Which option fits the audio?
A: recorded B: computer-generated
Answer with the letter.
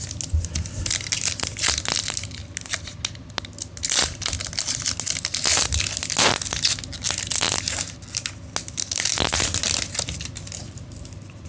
A